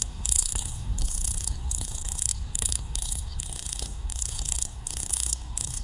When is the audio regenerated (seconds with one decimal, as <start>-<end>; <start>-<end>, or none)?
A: 0.0-5.8